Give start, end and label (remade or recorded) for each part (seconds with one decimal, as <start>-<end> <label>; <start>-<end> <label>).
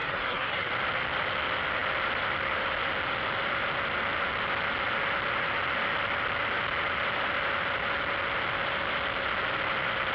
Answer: 0.0-0.7 remade; 0.7-10.1 recorded